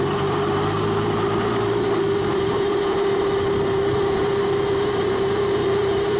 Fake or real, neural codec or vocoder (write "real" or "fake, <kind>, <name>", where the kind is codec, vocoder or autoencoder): fake, vocoder, BigVGAN v2